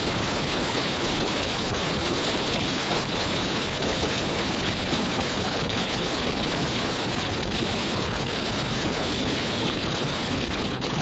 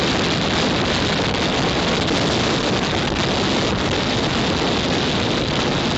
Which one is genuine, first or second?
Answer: second